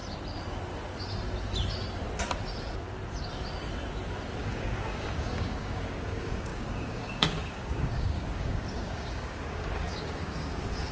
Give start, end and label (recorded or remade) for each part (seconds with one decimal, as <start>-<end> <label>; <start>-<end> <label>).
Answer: 0.0-4.4 recorded; 4.4-10.9 remade